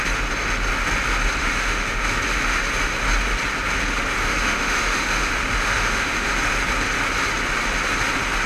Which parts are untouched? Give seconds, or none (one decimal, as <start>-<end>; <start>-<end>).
0.0-1.4; 2.2-4.2; 6.3-8.5